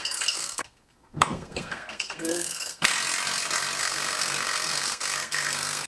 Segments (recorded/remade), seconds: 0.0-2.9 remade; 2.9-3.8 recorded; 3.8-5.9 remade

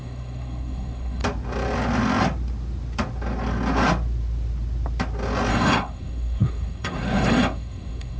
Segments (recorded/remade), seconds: 0.0-1.2 remade; 1.2-5.5 recorded; 5.5-8.2 remade

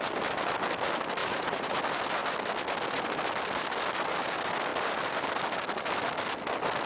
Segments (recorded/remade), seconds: 0.0-1.2 recorded; 1.2-1.8 remade; 1.8-6.9 recorded

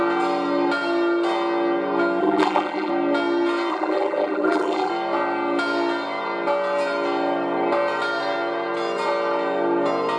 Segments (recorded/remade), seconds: 0.0-2.2 recorded; 2.2-2.9 remade; 2.9-3.7 recorded; 3.7-4.9 remade; 4.9-10.2 recorded